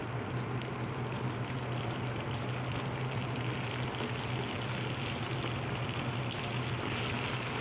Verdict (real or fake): real